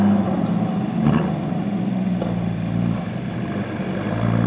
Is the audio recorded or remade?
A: recorded